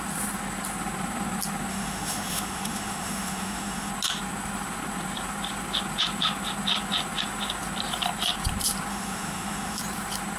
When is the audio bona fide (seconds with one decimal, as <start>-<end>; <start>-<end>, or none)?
0.0-1.7; 3.9-8.9; 9.8-10.4